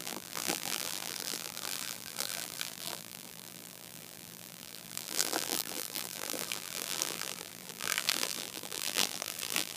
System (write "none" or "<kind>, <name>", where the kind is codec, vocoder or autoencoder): vocoder, BigVGAN v2